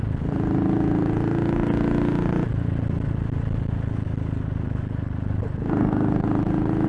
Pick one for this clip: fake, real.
real